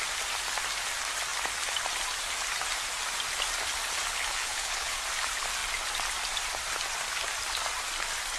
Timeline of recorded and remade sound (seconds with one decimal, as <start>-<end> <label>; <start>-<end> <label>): 0.0-4.1 recorded; 4.1-5.0 remade; 5.0-8.4 recorded

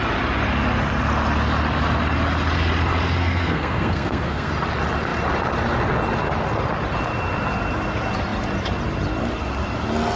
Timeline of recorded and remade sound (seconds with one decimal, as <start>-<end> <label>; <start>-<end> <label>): 0.0-3.2 recorded; 3.2-4.5 remade; 4.5-10.2 recorded

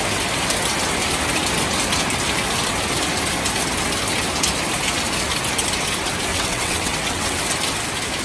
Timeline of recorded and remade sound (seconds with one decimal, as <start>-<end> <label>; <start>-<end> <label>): 0.0-6.3 recorded; 6.3-7.4 remade; 7.4-8.2 recorded

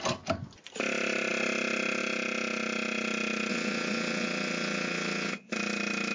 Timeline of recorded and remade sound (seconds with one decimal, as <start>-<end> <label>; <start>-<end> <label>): 0.0-3.5 recorded; 3.5-5.5 remade; 5.5-6.1 recorded

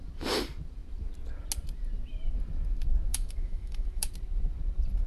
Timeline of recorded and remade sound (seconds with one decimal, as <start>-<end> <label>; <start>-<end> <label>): 0.0-3.1 recorded; 3.1-4.1 remade; 4.1-5.1 recorded

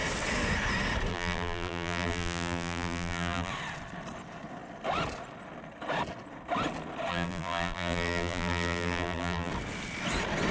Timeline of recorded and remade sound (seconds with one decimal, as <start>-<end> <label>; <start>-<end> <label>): 0.0-1.1 recorded; 1.1-3.5 remade; 3.5-7.1 recorded; 7.1-9.5 remade; 9.5-10.5 recorded

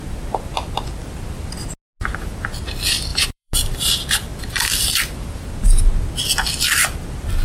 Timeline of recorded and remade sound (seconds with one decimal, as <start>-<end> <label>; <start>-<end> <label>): 0.0-1.0 recorded; 1.0-1.6 remade; 1.6-3.1 recorded; 3.1-3.9 remade; 3.9-4.3 recorded; 4.3-5.5 remade; 5.5-7.4 recorded

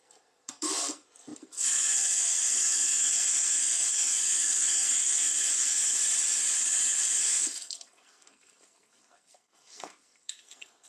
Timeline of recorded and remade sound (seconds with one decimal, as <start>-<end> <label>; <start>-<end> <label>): 0.0-6.0 remade; 6.0-7.1 recorded; 7.1-10.9 remade